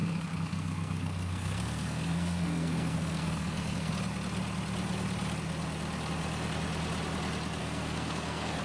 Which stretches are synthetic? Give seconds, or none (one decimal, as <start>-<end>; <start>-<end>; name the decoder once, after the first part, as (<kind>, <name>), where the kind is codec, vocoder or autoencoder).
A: 0.0-3.9 (codec, SNAC); 7.6-8.6